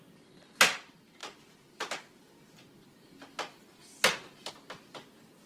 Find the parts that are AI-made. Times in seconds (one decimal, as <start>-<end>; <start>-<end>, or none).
none

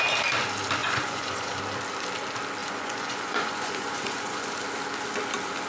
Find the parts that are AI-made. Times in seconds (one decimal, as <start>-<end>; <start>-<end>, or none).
0.8-1.6; 2.6-4.5

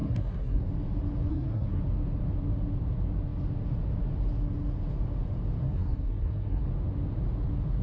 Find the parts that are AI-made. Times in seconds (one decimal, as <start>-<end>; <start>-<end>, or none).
0.0-0.6; 1.3-1.8; 5.6-6.6